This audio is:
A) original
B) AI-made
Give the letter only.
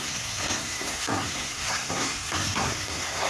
B